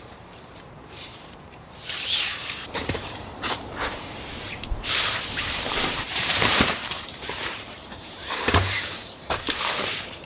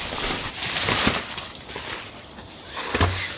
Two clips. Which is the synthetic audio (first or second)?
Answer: first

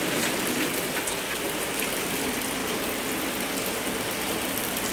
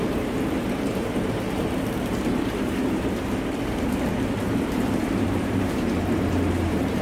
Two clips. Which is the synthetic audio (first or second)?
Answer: second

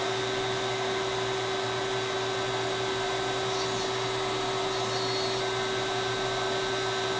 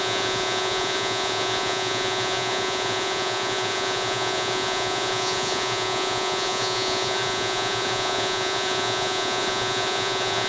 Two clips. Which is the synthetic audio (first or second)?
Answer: second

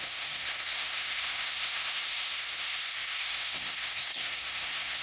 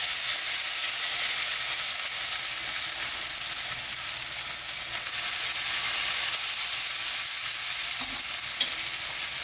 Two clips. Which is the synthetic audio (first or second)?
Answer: first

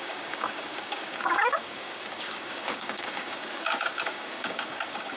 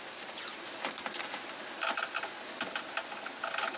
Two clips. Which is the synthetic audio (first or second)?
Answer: first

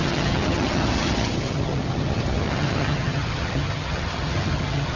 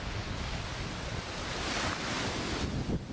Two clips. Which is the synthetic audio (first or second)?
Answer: first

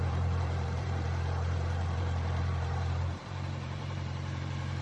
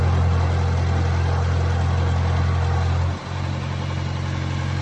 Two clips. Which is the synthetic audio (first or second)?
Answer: first